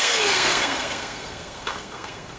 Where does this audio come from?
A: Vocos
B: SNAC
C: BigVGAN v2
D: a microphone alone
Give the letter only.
B